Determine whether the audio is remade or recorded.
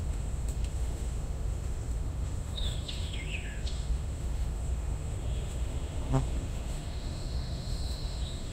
remade